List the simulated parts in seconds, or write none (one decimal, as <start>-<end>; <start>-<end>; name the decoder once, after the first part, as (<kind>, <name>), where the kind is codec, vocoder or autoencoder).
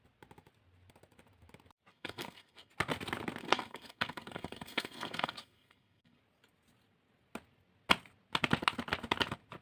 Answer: 1.9-2.7 (codec, SNAC); 3.4-6.2